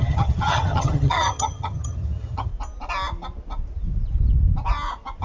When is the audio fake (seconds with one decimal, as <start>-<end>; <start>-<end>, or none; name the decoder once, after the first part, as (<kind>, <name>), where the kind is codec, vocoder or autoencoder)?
0.0-2.5 (vocoder, HiFi-GAN)